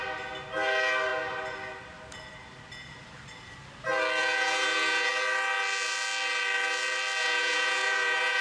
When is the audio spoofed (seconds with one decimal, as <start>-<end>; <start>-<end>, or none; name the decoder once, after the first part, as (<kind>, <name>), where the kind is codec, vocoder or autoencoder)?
4.2-5.1 (vocoder, Vocos); 7.2-8.4